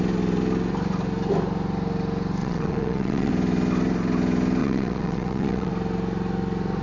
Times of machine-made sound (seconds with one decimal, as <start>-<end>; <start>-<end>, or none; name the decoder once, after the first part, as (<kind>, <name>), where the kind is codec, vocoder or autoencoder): 2.4-3.3 (vocoder, WaveNeXt); 4.6-5.7